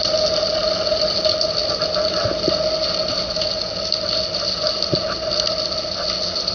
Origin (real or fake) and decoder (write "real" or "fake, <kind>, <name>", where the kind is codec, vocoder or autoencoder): real